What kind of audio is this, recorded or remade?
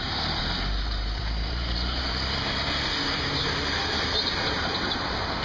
remade